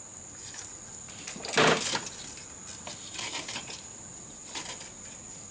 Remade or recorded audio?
recorded